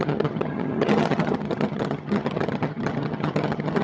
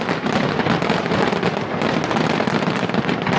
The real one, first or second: second